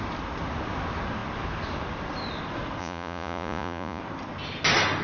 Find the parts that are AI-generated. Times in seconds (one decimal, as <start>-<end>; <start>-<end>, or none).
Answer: 2.8-4.0